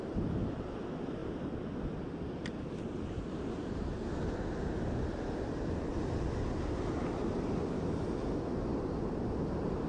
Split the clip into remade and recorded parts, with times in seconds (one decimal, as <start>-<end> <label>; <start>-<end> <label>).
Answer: 0.0-9.9 recorded